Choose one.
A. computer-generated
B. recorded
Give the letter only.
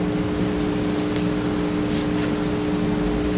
B